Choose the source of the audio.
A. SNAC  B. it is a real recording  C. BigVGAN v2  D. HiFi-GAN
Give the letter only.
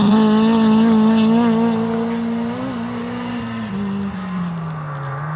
B